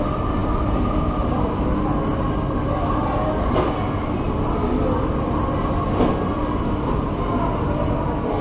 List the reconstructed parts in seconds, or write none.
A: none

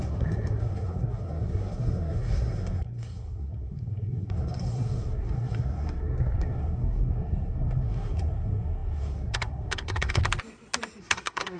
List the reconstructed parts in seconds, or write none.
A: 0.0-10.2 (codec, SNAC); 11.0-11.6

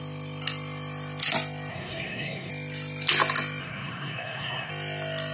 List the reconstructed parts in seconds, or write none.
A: 1.7-2.5 (codec, SNAC); 3.6-4.7